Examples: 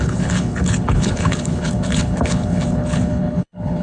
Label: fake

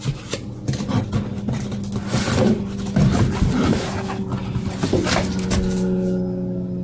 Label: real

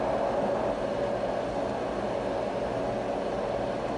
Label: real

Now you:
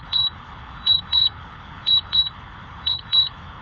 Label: fake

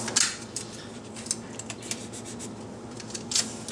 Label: real